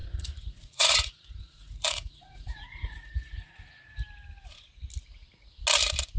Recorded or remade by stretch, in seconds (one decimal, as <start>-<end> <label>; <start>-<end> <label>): 0.0-3.7 remade; 3.7-6.2 recorded